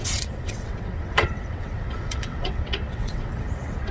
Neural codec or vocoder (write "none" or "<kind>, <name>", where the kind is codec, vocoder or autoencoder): vocoder, WaveNeXt